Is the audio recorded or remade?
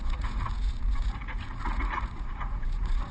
remade